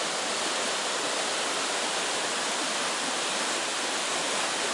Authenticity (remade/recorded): recorded